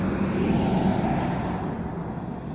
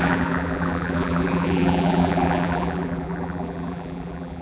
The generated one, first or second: second